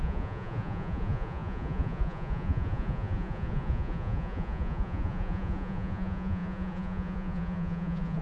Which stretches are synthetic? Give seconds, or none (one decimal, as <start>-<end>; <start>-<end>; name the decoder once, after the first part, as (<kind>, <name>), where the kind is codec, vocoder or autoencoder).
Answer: 0.0-8.2 (vocoder, Vocos)